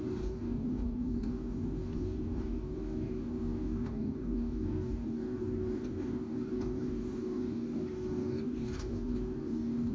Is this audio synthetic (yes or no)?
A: yes